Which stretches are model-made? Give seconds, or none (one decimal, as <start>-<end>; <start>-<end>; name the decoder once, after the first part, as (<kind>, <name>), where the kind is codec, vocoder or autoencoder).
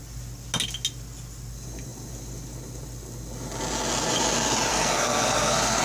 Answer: 4.7-5.8 (codec, SNAC)